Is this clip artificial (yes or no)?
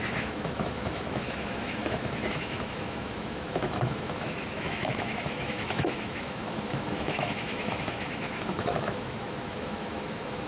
yes